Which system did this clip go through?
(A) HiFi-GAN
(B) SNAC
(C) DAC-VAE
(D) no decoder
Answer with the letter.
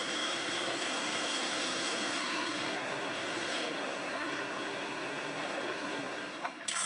B